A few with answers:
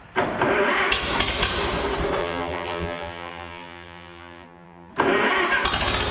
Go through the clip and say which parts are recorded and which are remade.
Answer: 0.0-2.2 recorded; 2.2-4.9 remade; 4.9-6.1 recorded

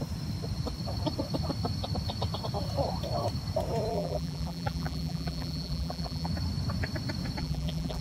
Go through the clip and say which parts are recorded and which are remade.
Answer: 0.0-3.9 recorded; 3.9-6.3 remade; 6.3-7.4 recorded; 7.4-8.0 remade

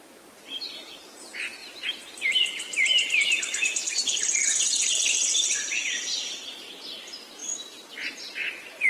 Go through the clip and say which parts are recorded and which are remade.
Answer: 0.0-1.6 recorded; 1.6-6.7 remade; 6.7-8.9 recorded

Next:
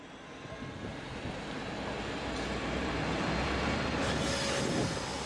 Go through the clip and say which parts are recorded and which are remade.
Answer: 0.0-0.9 recorded; 0.9-4.1 remade; 4.1-5.3 recorded

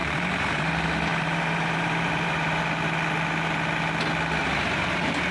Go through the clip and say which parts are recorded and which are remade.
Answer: 0.0-0.7 remade; 0.7-1.1 recorded; 1.1-2.6 remade; 2.6-4.4 recorded; 4.4-5.3 remade